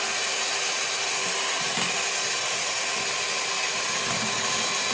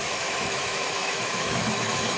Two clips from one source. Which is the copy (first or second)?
second